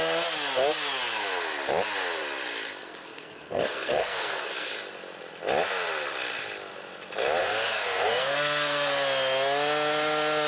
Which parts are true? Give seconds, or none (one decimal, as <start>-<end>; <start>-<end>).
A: 0.0-2.8; 4.7-7.4; 8.9-10.5